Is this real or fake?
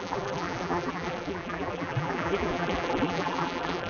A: fake